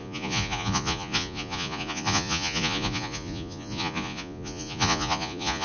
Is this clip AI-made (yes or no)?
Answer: yes